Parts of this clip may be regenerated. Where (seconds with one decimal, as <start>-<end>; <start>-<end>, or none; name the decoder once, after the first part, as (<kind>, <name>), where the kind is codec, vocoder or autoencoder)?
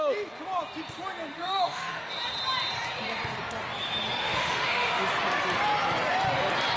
1.3-2.1 (autoencoder, DAC-VAE); 4.2-5.0